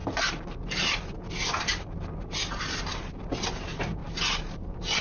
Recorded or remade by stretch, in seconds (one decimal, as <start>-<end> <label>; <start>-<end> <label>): 0.0-4.0 recorded; 4.0-5.0 remade